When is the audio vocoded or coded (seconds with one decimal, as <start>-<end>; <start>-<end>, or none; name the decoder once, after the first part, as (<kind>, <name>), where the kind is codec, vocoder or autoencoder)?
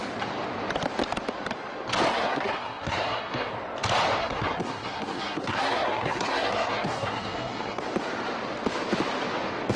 2.1-3.5 (codec, SNAC); 4.2-7.8